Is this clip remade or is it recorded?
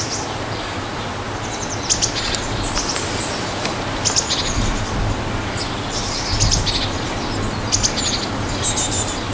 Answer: recorded